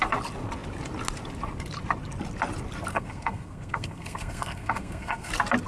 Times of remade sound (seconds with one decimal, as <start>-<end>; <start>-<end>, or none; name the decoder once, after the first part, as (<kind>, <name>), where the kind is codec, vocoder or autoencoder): 2.9-5.3 (codec, SNAC)